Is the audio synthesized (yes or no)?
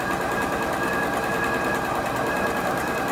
no